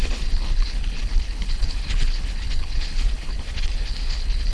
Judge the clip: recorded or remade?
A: remade